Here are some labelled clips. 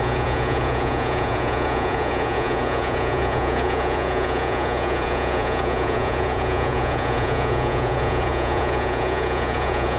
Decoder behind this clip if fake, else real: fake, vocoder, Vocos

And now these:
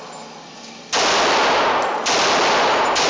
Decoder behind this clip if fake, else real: real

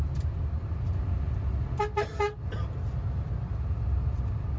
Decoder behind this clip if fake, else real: real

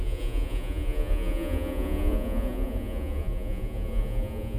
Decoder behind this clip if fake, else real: fake, vocoder, Vocos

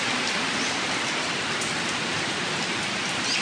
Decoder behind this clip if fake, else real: real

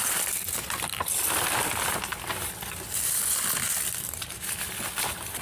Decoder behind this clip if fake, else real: real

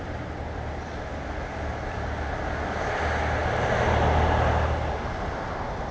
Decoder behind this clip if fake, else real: real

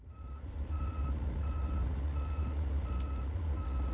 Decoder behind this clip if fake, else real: fake, vocoder, Vocos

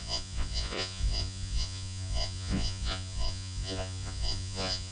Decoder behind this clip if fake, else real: fake, vocoder, Vocos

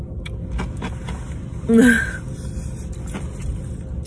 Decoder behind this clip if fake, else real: real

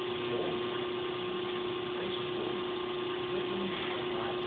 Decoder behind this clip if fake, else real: real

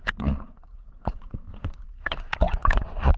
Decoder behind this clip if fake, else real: fake, vocoder, Vocos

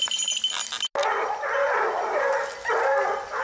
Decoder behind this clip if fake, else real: real